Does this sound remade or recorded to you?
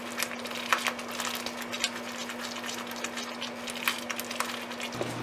recorded